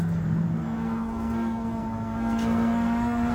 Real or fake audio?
fake